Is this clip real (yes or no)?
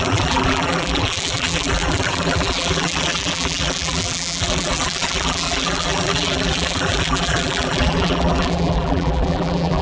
no